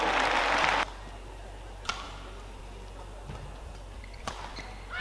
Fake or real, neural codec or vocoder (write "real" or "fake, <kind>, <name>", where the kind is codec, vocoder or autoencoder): real